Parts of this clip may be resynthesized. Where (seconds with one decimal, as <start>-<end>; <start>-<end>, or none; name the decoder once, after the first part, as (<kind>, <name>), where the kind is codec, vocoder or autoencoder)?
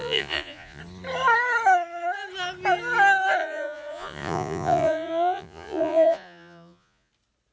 0.0-0.8 (vocoder, Vocos); 3.4-7.1